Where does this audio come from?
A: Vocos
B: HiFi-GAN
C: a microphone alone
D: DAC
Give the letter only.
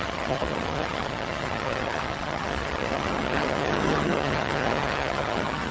B